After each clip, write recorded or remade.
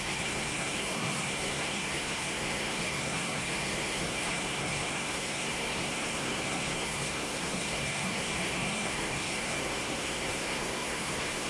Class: remade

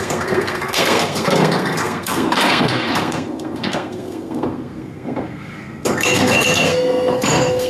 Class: remade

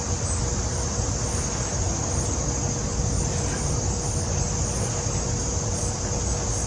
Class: recorded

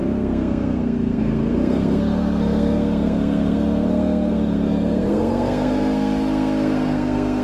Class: remade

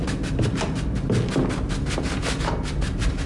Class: recorded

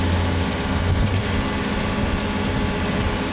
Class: recorded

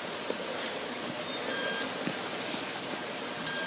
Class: recorded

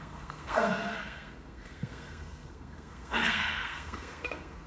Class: remade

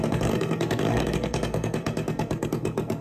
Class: remade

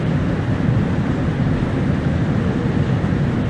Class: recorded